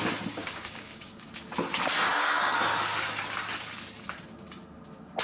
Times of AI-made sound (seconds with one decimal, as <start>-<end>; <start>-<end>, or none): 0.4-1.3